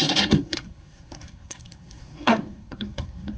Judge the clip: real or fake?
fake